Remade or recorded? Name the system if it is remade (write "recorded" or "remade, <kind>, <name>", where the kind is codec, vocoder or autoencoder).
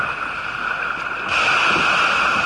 recorded